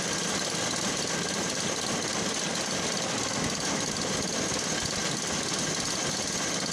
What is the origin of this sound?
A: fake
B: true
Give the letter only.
B